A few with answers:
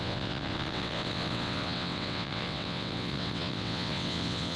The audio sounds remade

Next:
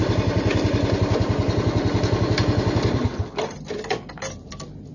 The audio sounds recorded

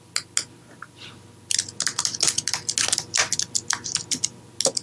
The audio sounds recorded